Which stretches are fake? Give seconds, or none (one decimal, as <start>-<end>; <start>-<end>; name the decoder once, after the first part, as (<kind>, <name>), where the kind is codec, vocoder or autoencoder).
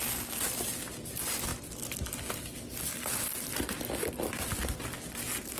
none